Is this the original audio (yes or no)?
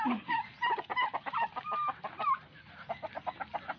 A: yes